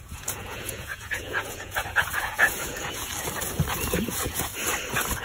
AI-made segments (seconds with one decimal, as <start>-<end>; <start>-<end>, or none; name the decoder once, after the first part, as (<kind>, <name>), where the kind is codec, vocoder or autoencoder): 0.0-3.1 (vocoder, Vocos); 4.1-4.5